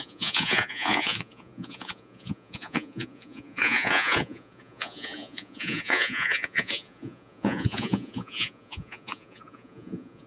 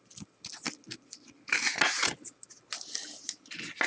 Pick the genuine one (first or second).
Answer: second